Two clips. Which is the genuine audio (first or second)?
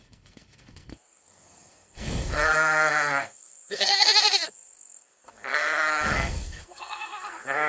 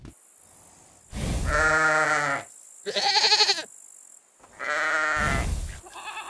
second